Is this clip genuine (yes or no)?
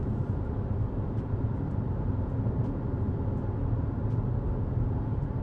no